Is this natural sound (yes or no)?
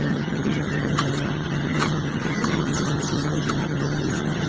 no